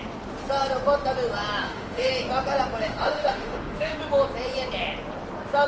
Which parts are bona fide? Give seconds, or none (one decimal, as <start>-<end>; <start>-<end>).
0.0-1.6; 2.1-2.8; 4.0-5.7